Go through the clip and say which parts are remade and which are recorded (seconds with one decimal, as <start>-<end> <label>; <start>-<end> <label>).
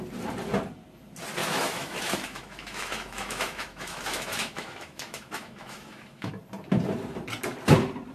0.0-1.4 recorded; 1.4-6.3 remade; 6.3-8.1 recorded